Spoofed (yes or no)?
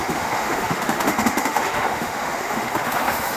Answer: yes